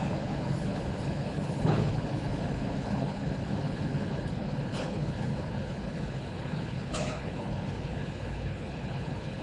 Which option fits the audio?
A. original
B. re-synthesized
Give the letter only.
B